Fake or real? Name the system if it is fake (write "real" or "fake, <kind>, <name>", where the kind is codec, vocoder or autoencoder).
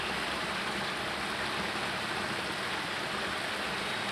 real